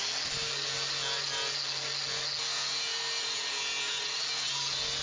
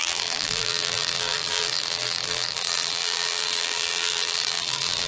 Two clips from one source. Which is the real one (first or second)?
first